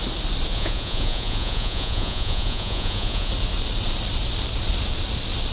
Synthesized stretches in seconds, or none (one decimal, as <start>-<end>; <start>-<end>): 0.5-3.3